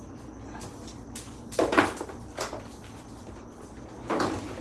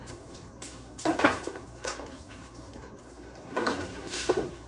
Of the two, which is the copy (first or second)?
second